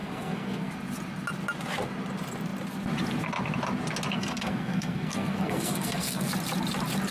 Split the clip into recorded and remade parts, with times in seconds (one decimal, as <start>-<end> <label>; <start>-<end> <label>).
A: 0.0-0.7 remade; 0.7-4.1 recorded; 4.1-6.3 remade; 6.3-7.1 recorded